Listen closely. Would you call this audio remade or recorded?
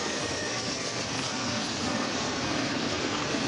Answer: remade